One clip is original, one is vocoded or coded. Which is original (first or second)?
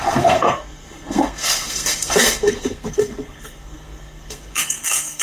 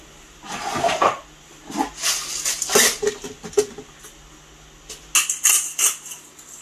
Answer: second